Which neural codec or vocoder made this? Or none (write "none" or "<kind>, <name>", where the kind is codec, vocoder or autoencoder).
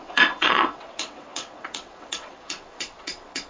vocoder, WaveNeXt